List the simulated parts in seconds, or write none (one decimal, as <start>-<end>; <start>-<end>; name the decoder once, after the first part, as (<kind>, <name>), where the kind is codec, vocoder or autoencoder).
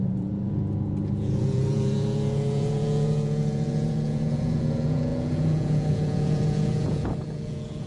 0.0-7.9 (vocoder, Vocos)